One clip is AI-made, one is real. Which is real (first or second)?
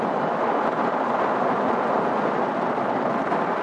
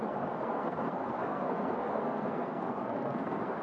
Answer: first